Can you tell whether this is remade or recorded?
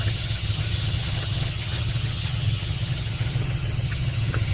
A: remade